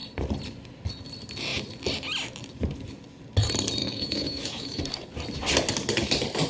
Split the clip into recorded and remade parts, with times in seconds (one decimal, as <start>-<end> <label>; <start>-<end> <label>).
0.0-3.8 recorded; 3.8-4.8 remade; 4.8-6.5 recorded